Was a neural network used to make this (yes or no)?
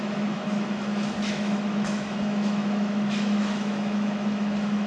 yes